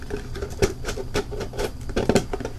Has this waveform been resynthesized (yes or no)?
yes